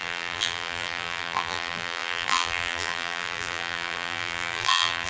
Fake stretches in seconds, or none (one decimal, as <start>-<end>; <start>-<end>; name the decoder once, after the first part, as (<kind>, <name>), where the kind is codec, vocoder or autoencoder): 0.0-5.1 (vocoder, BigVGAN v2)